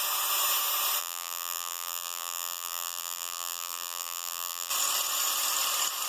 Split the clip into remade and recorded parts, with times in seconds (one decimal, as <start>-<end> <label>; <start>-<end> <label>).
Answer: 0.0-1.0 recorded; 1.0-4.7 remade; 4.7-6.1 recorded